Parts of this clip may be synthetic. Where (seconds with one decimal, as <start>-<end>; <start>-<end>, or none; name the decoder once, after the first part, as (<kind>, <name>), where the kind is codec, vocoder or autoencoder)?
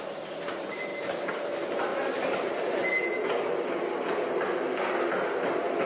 0.9-1.5 (vocoder, BigVGAN v2)